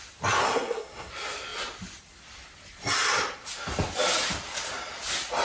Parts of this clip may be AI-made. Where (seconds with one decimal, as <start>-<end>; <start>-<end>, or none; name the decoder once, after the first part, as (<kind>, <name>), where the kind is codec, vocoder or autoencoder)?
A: 0.4-1.1 (codec, SNAC)